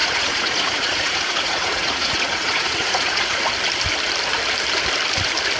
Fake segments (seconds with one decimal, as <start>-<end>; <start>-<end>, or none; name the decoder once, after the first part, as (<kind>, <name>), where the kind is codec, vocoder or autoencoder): 0.0-3.4 (vocoder, Vocos)